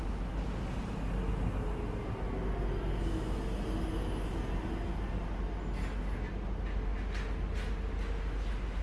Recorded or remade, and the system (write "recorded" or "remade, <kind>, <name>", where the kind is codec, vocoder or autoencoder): recorded